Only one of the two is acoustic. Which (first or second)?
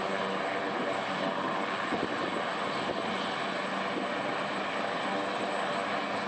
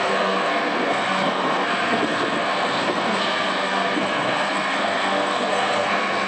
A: first